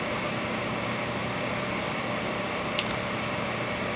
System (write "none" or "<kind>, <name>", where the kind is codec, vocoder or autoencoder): none